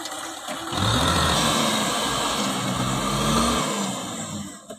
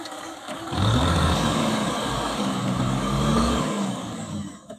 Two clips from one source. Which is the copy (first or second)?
second